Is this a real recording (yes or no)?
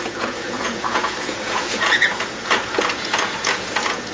no